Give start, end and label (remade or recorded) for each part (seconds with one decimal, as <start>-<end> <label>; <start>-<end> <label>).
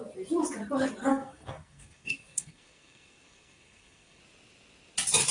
0.0-1.1 recorded; 1.1-4.2 remade; 4.2-5.3 recorded